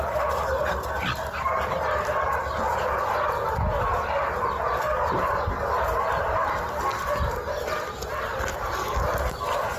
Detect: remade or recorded recorded